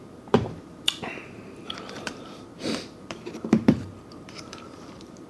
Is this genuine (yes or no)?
no